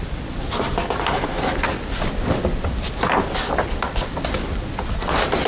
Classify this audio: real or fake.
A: real